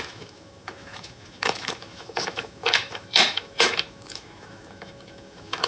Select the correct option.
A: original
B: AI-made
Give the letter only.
B